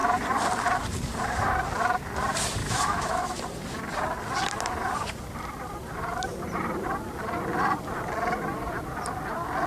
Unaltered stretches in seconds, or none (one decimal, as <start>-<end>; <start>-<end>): 0.0-2.6; 3.4-9.7